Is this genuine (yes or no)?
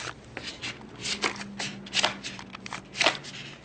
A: yes